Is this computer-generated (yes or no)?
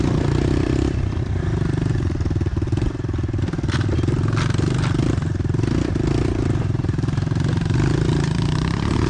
yes